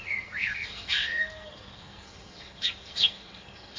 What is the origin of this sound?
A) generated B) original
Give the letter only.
A